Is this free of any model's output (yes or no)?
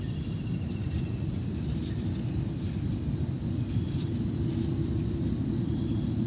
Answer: yes